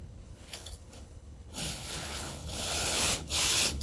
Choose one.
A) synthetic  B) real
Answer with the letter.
A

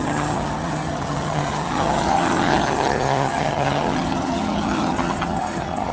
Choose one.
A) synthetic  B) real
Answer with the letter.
A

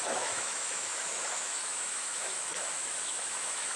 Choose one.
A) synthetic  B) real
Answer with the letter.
A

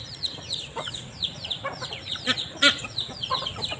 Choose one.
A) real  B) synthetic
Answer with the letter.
B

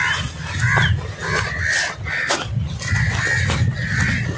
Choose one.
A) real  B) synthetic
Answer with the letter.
A